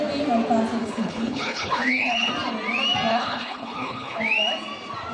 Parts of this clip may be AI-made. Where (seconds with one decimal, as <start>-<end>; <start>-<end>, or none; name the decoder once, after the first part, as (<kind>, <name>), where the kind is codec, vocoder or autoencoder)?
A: 0.8-2.3 (codec, HILCodec); 3.1-4.2